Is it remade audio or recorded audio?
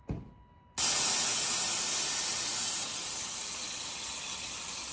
recorded